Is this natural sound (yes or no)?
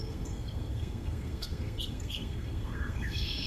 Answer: no